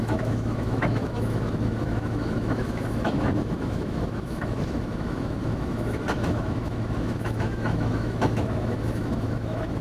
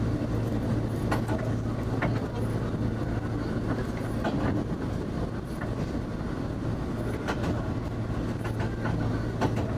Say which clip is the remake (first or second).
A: first